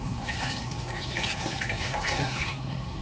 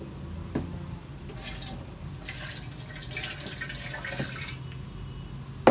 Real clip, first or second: second